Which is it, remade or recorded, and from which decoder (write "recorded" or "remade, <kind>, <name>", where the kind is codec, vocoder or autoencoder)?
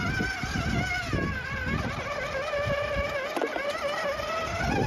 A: recorded